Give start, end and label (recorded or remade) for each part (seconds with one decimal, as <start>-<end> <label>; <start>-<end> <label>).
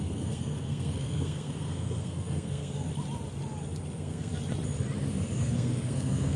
0.0-2.9 remade; 2.9-3.9 recorded; 3.9-4.3 remade; 4.3-5.4 recorded; 5.4-6.4 remade